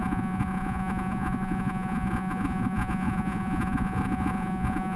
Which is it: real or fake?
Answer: fake